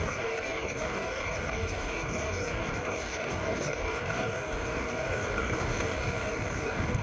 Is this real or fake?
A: fake